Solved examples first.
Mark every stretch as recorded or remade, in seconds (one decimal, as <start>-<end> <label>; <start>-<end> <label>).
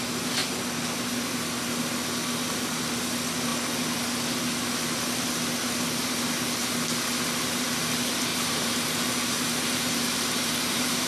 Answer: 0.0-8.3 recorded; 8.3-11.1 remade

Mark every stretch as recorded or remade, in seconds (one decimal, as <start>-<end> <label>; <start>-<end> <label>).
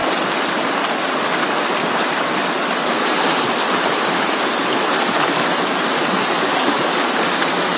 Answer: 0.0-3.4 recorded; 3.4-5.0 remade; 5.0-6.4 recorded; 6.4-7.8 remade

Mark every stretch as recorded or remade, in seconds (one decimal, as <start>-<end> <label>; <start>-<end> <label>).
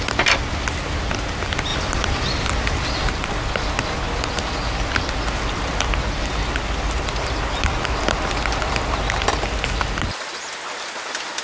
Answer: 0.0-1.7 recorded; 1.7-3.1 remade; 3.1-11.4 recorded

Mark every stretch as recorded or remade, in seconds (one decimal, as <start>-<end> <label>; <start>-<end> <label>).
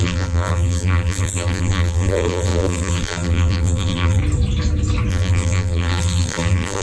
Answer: 0.0-4.2 remade; 4.2-5.1 recorded; 5.1-6.8 remade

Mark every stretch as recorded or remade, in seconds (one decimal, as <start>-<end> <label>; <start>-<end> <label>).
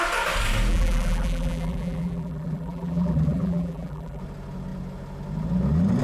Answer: 0.0-0.7 recorded; 0.7-4.2 remade; 4.2-6.0 recorded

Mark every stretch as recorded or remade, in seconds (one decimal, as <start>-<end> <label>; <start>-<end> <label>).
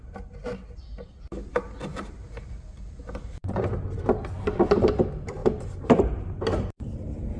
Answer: 0.0-1.9 recorded; 1.9-3.6 remade; 3.6-5.4 recorded; 5.4-7.4 remade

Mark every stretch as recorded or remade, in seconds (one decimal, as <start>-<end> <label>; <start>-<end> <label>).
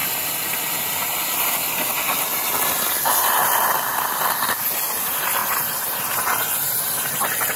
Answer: 0.0-0.7 remade; 0.7-2.3 recorded; 2.3-4.1 remade; 4.1-5.4 recorded; 5.4-6.0 remade; 6.0-7.6 recorded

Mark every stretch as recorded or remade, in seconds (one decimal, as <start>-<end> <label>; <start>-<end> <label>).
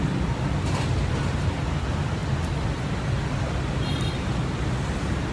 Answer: 0.0-5.3 recorded